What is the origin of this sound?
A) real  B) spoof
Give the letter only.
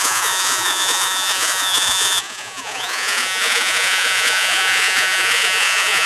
B